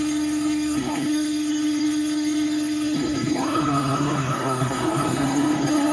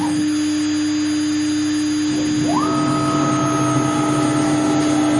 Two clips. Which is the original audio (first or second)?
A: second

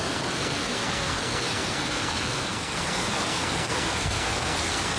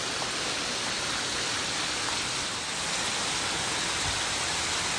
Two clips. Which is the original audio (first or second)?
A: second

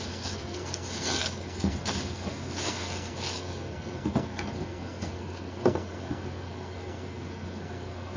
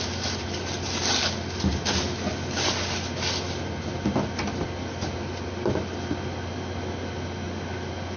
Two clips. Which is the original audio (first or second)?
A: second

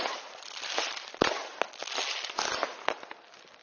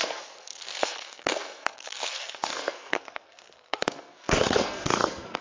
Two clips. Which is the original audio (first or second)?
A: first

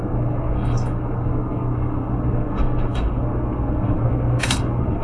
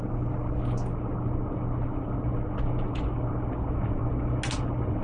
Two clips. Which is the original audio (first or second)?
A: second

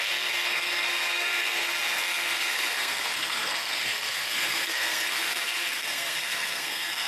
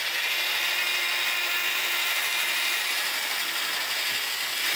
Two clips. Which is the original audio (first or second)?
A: second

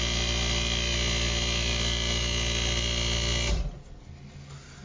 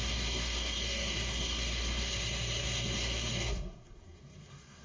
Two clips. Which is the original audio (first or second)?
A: first